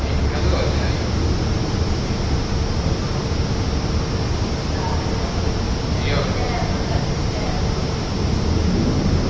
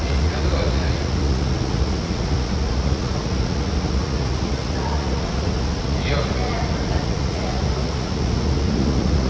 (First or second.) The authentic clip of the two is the first